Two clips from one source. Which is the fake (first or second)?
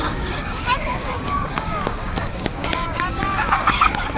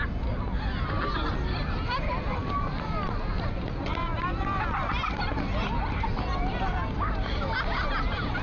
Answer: first